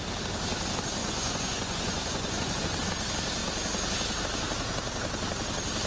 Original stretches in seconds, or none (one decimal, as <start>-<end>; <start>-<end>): 0.0-1.0; 2.6-5.9